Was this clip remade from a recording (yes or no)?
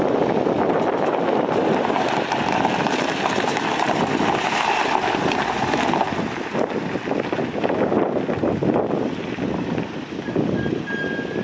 no